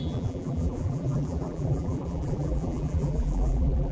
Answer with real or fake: fake